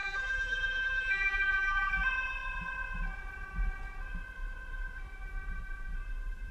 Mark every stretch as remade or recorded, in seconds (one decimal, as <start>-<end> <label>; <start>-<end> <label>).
0.0-1.9 remade; 1.9-6.5 recorded